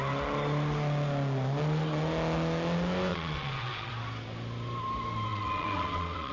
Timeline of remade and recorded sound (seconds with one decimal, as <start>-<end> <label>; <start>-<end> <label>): 0.0-3.1 recorded; 3.1-3.9 remade; 3.9-5.3 recorded; 5.3-6.3 remade